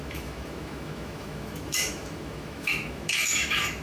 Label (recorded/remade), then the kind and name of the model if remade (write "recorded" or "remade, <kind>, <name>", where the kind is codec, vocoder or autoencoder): remade, autoencoder, DAC-VAE